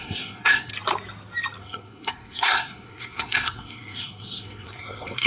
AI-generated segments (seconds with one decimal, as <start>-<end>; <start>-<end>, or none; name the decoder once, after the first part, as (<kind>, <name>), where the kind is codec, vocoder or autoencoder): 0.0-0.7 (codec, SNAC); 1.6-5.3